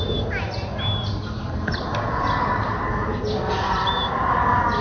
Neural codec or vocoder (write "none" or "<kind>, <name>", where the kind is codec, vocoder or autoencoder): none